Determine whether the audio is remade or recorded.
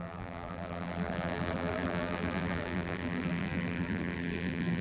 remade